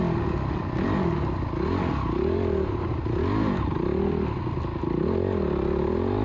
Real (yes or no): yes